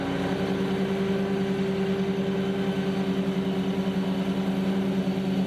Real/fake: real